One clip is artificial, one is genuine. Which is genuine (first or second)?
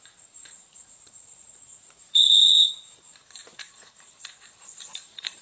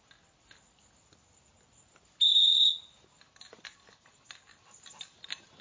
second